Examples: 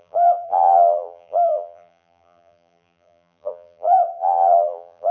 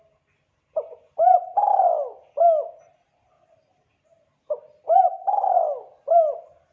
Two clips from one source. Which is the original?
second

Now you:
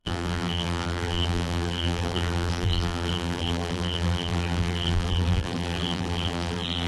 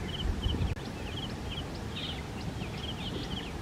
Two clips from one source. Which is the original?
second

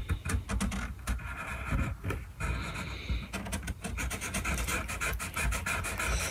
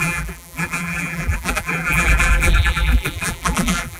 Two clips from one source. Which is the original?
first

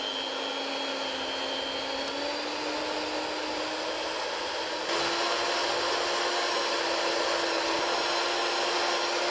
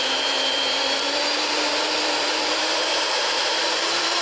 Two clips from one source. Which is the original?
first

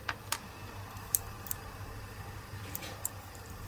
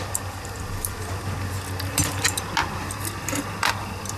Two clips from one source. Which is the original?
second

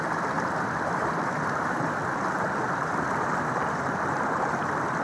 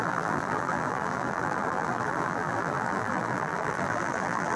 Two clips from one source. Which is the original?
first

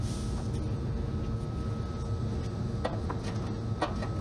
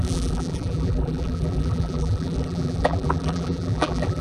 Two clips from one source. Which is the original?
first